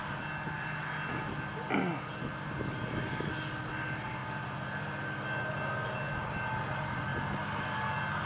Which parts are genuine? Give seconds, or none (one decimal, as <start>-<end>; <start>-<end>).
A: 0.0-8.3